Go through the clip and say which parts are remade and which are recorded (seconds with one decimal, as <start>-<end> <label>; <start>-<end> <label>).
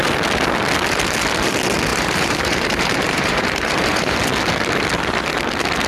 0.0-1.9 recorded; 1.9-4.2 remade; 4.2-5.9 recorded